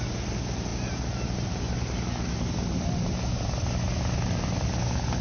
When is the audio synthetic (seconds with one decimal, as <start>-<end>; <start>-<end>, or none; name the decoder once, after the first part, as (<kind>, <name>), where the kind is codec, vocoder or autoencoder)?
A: none